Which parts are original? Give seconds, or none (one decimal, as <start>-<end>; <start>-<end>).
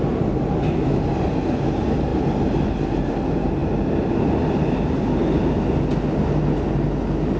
0.0-7.4